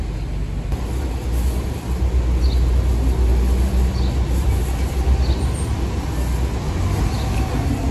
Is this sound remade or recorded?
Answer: recorded